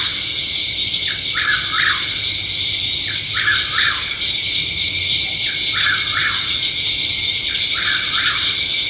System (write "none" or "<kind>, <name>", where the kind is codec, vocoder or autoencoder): none